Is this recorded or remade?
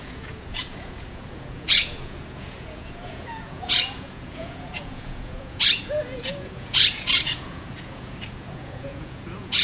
remade